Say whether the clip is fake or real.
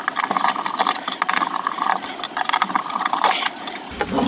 real